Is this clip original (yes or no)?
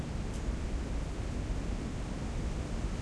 yes